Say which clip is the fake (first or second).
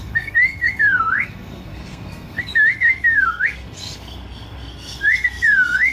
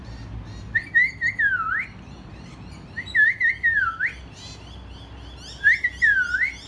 first